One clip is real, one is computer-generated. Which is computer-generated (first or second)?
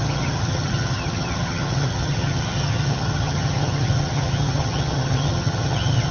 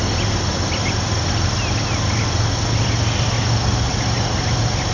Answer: first